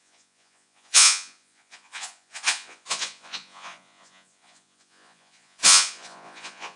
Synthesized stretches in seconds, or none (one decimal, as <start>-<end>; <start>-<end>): 0.0-6.8